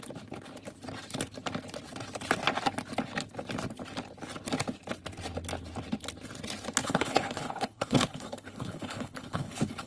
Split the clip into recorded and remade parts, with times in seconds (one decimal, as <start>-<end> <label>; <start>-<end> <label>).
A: 0.0-6.8 recorded; 6.8-9.9 remade